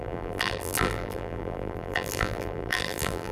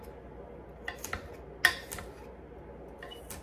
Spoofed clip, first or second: first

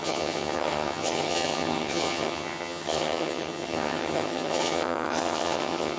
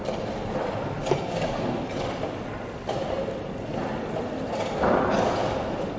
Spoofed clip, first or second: first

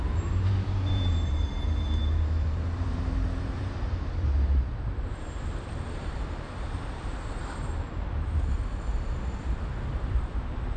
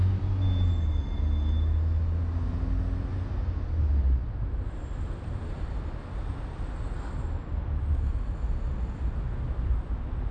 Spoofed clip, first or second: first